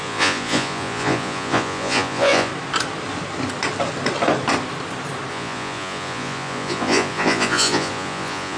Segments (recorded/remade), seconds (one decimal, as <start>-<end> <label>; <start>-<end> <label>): 0.0-2.5 remade; 2.5-5.3 recorded; 5.3-8.6 remade